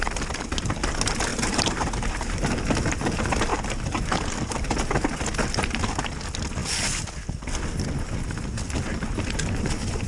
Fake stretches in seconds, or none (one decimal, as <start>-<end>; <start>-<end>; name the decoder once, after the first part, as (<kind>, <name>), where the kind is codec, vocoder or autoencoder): 1.3-2.7 (vocoder, BigVGAN v2); 3.5-4.7